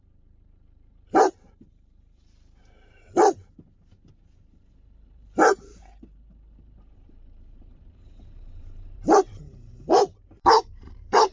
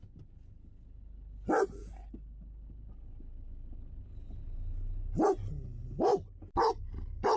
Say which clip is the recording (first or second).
second